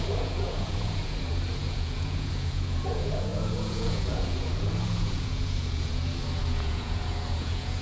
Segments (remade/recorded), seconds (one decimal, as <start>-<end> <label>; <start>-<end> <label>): 0.0-7.8 remade